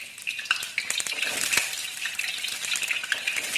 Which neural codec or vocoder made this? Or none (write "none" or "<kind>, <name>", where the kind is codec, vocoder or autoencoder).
none